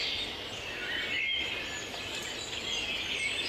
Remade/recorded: recorded